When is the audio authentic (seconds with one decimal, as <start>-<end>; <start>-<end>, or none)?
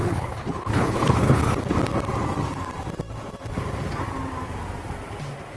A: 1.6-5.6